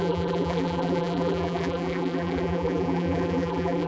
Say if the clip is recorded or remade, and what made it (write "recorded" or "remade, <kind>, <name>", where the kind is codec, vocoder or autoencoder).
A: remade, vocoder, BigVGAN v2